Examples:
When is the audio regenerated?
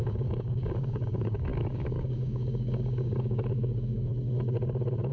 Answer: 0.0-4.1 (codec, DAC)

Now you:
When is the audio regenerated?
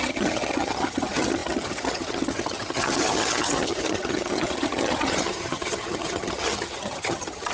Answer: 0.0-7.5 (vocoder, HiFi-GAN)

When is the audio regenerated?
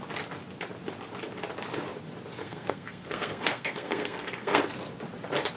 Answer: 2.4-4.6 (codec, SNAC)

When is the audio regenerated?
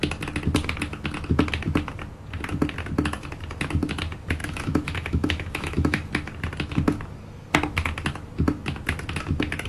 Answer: 4.4-6.0 (autoencoder, DAC-VAE)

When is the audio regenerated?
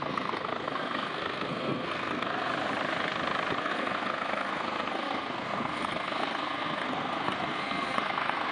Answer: 0.0-2.5 (codec, SNAC); 3.6-8.5